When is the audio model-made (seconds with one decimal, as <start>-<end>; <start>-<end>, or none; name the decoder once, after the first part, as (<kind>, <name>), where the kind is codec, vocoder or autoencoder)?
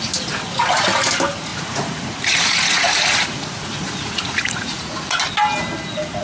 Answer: 1.5-5.2 (vocoder, Vocos)